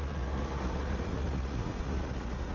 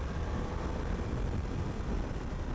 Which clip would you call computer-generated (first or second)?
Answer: first